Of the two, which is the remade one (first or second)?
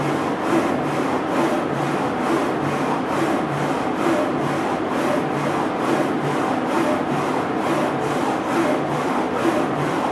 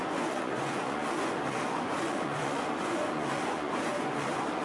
second